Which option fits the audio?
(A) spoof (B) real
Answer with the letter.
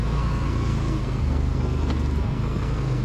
A